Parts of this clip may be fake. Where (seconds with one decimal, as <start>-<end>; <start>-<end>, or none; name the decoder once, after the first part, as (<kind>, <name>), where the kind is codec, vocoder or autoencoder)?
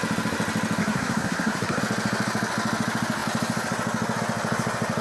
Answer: 0.8-1.8 (codec, SNAC)